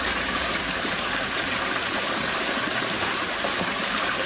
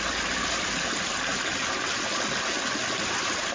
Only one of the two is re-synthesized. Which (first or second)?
first